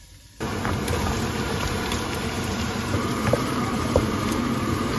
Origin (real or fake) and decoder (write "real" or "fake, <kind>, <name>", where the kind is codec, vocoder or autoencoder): fake, vocoder, BigVGAN v2